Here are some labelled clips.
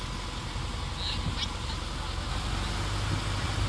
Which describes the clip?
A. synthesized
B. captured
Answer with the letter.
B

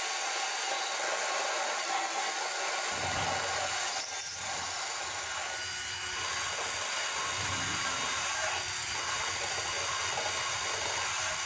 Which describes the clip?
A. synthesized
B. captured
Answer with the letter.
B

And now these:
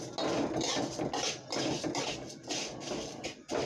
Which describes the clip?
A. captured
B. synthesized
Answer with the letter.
A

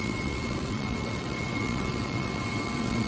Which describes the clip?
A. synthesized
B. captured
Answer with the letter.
A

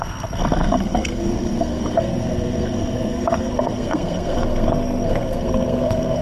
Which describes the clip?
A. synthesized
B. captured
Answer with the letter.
A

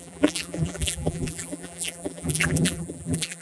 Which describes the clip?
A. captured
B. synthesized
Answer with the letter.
B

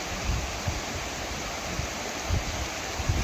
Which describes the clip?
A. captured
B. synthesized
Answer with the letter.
A